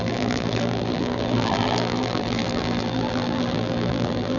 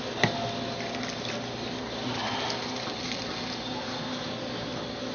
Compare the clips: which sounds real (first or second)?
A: second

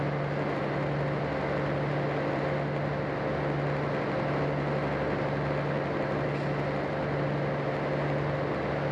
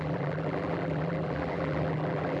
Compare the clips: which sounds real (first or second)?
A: first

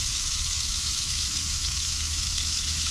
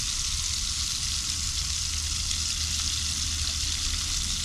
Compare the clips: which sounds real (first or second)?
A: second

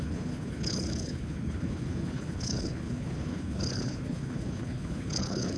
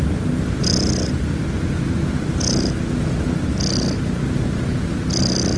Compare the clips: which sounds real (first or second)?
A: second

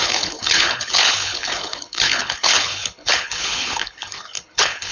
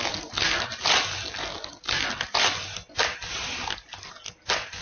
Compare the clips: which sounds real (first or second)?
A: second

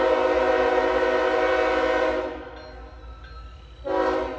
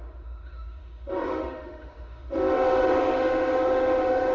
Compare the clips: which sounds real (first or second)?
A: first